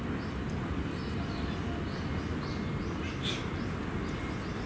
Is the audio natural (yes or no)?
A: yes